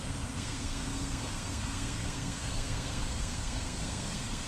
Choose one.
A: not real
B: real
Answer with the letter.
A